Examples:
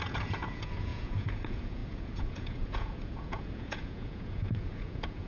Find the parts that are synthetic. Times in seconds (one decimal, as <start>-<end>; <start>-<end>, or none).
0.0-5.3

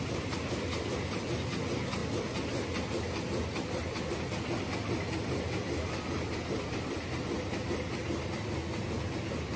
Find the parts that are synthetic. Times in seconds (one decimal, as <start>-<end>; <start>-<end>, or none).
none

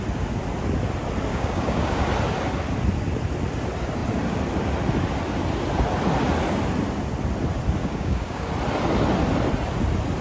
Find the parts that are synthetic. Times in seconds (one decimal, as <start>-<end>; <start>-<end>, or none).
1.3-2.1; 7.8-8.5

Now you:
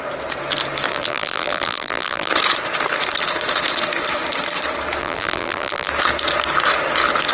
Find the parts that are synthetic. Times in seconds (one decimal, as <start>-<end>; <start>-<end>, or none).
0.9-2.3; 5.0-5.9

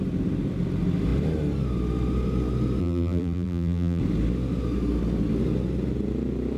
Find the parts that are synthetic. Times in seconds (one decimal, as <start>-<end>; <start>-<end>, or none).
2.8-4.0